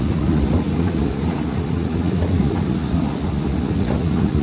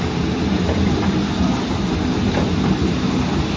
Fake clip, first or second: first